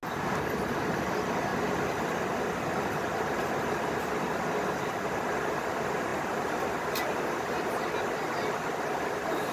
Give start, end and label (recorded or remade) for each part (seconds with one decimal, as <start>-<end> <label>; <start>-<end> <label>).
0.0-9.5 recorded